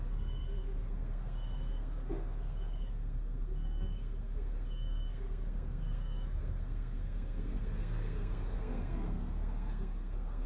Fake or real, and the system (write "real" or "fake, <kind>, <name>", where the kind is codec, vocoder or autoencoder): fake, codec, SNAC